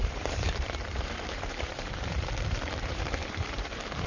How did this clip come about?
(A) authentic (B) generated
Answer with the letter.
B